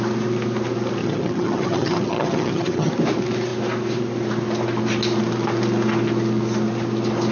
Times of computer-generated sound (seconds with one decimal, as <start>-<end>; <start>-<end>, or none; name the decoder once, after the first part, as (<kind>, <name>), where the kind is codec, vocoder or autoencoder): 1.0-2.9 (vocoder, HiFi-GAN)